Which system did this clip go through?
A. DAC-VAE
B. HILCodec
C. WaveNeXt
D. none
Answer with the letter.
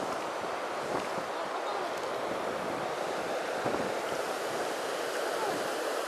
D